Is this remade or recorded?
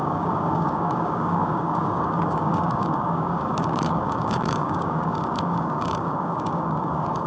remade